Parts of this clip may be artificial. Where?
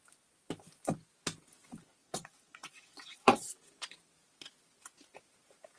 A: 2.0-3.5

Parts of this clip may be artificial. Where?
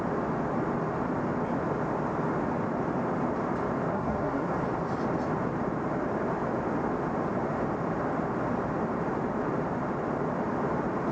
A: 3.9-4.5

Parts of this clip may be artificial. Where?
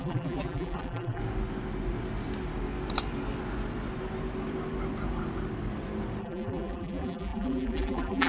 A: 0.0-1.2; 6.2-8.3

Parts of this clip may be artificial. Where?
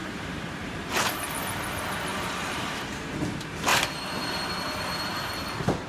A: 0.0-1.4; 2.1-2.8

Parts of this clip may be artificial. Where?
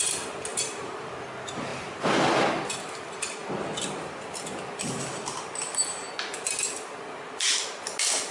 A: 0.5-1.1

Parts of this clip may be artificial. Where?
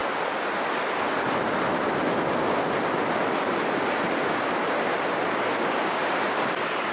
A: none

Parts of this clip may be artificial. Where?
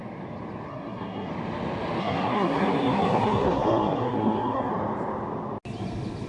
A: 0.7-1.3; 2.0-4.7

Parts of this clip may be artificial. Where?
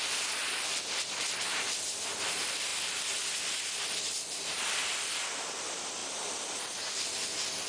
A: 0.4-1.4; 6.0-6.6